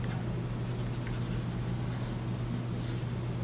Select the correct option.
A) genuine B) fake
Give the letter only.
A